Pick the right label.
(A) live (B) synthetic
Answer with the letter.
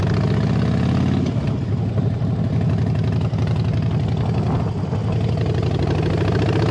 A